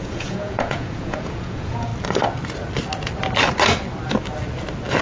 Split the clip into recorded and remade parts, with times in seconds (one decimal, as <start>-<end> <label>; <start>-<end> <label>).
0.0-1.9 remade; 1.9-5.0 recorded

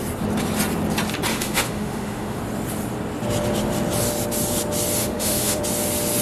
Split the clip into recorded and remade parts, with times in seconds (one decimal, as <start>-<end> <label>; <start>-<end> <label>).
0.0-1.3 recorded; 1.3-2.4 remade; 2.4-5.0 recorded; 5.0-5.6 remade; 5.6-6.2 recorded

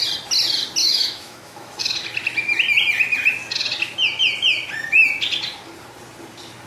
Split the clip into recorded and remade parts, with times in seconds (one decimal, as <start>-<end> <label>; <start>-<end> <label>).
0.0-0.8 recorded; 0.8-1.8 remade; 1.8-6.7 recorded

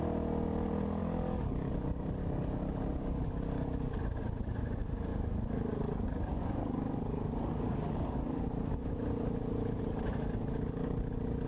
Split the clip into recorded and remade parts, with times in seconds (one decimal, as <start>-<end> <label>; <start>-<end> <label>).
0.0-1.0 recorded; 1.0-1.7 remade; 1.7-2.2 recorded; 2.2-3.1 remade; 3.1-5.1 recorded; 5.1-8.4 remade; 8.4-11.5 recorded

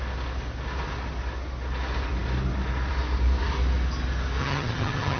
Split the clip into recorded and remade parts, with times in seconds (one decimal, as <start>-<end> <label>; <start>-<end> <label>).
0.0-4.4 recorded; 4.4-5.2 remade

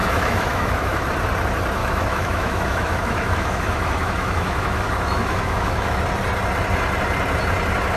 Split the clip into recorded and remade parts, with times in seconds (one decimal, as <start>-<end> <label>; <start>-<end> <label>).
0.0-1.1 remade; 1.1-1.8 recorded; 1.8-6.0 remade; 6.0-8.0 recorded